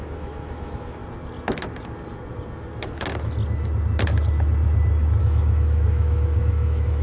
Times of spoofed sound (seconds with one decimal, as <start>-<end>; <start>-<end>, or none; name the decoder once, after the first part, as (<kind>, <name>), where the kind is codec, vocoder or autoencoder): 0.0-1.0 (autoencoder, DAC-VAE); 5.2-7.0